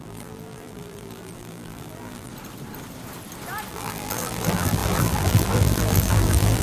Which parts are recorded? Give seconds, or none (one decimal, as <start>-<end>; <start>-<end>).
2.3-3.7